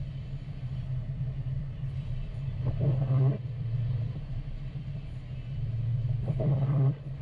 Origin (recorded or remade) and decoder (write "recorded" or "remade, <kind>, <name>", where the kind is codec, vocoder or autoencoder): remade, vocoder, BigVGAN v2